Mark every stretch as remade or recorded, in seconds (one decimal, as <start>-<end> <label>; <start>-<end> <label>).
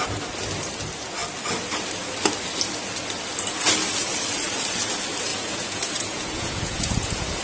0.0-5.3 recorded; 5.3-7.4 remade